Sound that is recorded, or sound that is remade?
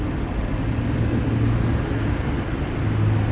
recorded